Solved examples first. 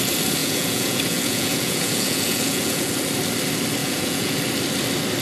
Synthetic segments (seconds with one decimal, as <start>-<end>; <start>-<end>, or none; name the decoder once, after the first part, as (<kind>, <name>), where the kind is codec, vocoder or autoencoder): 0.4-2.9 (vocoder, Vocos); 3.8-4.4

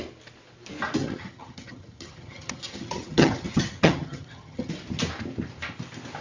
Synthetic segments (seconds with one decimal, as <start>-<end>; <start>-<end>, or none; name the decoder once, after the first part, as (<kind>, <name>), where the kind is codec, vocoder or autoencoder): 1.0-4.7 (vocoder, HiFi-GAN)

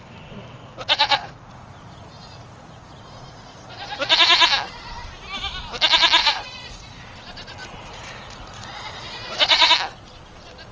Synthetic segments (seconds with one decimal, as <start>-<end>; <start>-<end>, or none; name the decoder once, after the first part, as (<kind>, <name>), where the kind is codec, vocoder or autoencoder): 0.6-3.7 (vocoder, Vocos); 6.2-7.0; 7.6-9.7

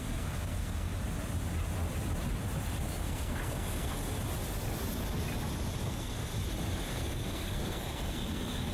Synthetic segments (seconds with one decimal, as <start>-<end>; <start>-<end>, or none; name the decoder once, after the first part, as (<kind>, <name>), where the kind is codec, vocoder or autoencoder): 0.0-0.9 (codec, SNAC); 2.8-4.0; 5.8-6.3; 6.9-8.7